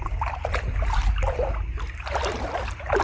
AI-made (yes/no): no